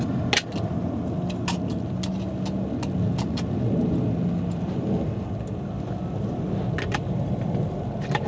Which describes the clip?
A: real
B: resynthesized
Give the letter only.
A